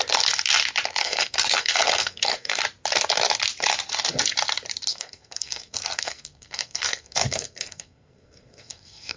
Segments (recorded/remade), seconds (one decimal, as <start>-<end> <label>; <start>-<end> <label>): 0.0-1.0 recorded; 1.0-2.6 remade; 2.6-4.9 recorded; 4.9-9.2 remade